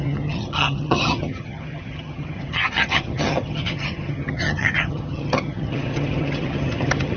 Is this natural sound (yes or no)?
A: no